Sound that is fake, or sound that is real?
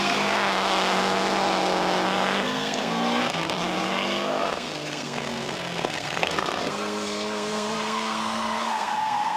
fake